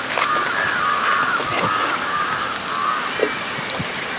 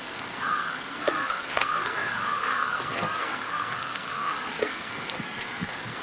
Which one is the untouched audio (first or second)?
first